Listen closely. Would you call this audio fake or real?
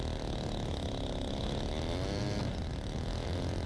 real